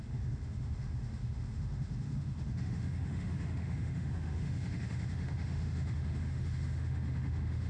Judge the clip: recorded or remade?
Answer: remade